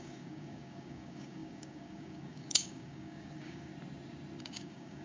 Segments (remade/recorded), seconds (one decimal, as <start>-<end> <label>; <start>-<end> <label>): 0.0-3.7 remade; 3.7-4.4 recorded; 4.4-5.0 remade